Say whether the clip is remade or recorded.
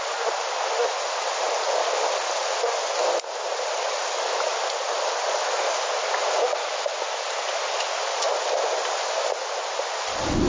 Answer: recorded